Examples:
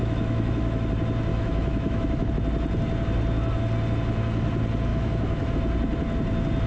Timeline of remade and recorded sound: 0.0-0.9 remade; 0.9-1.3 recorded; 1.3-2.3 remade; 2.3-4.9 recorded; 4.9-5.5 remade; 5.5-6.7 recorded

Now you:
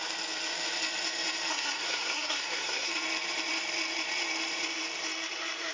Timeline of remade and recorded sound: 0.0-1.5 recorded; 1.5-2.9 remade; 2.9-5.7 recorded

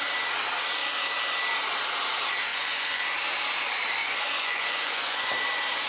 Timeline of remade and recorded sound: 0.0-2.5 recorded; 2.5-3.0 remade; 3.0-4.0 recorded; 4.0-5.3 remade; 5.3-5.9 recorded

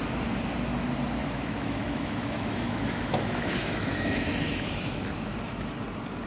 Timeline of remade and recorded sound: 0.0-1.2 recorded; 1.2-5.0 remade; 5.0-6.3 recorded

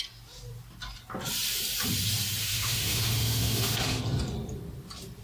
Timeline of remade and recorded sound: 0.0-2.4 recorded; 2.4-4.0 remade; 4.0-5.2 recorded

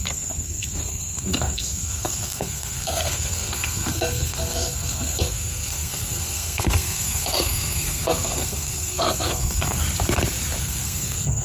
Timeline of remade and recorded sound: 0.0-9.8 remade; 9.8-10.6 recorded; 10.6-11.4 remade